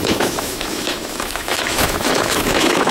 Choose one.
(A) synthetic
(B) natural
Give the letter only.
A